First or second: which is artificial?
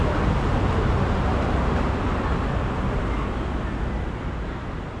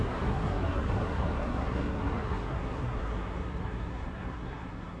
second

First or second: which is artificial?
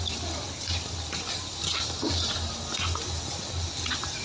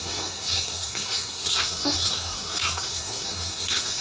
second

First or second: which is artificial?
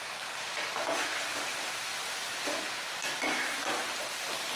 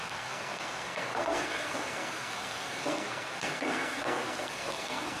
second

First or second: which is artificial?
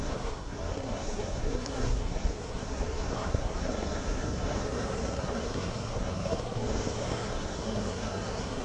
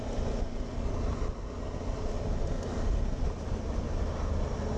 first